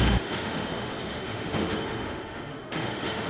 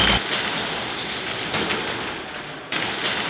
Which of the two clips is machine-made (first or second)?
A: first